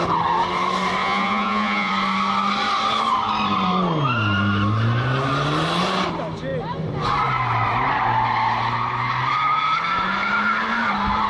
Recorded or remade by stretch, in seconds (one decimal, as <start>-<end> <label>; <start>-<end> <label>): 0.0-1.0 recorded; 1.0-1.9 remade; 1.9-11.3 recorded